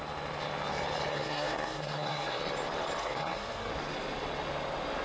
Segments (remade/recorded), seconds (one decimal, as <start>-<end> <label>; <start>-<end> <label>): 0.0-1.1 recorded; 1.1-2.4 remade; 2.4-3.0 recorded; 3.0-3.7 remade; 3.7-5.0 recorded